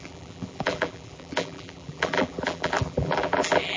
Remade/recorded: remade